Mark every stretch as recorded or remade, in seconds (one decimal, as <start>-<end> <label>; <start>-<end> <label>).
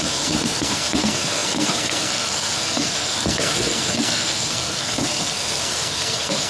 0.0-6.5 remade